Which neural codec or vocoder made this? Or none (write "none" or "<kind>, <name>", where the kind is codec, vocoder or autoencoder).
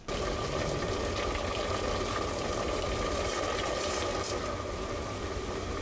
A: none